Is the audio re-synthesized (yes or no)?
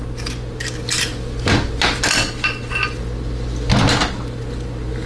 no